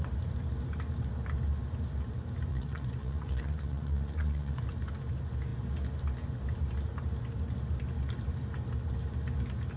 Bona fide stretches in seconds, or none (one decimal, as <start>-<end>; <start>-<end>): 0.0-2.5; 4.6-9.8